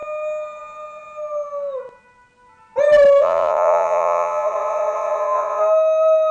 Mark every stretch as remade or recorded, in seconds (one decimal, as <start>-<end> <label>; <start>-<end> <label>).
0.0-3.2 recorded; 3.2-5.6 remade; 5.6-6.3 recorded